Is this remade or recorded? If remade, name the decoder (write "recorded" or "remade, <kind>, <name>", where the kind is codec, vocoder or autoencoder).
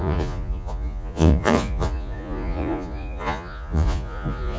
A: remade, vocoder, Vocos